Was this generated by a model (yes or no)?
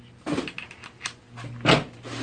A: no